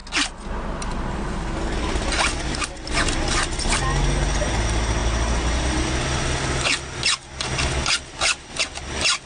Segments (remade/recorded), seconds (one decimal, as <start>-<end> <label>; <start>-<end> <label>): 0.0-9.3 recorded